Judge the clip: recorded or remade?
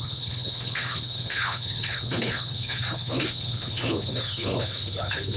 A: remade